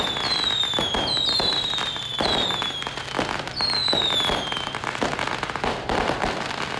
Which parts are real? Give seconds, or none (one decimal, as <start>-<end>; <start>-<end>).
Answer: 0.0-6.8